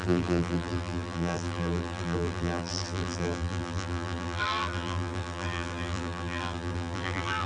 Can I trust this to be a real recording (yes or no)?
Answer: no